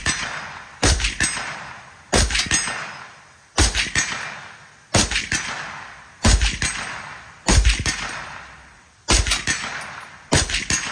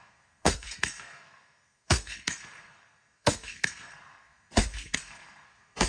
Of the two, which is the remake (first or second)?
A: second